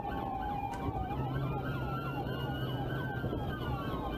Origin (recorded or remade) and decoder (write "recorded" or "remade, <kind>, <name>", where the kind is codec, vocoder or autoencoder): remade, vocoder, BigVGAN v2